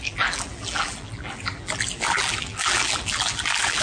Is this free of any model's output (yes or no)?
no